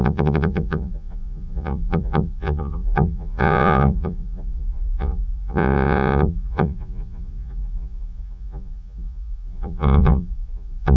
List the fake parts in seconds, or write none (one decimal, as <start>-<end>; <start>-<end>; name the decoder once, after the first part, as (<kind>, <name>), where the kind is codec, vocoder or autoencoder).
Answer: 0.0-11.0 (vocoder, Vocos)